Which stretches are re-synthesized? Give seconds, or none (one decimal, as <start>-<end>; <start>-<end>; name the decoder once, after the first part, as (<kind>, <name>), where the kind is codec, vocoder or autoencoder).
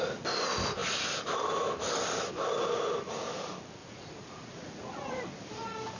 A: 3.8-5.2 (vocoder, Vocos)